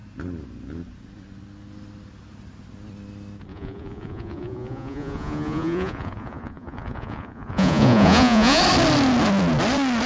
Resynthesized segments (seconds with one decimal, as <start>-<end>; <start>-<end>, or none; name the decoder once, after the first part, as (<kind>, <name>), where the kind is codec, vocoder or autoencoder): 3.5-8.6 (vocoder, Vocos)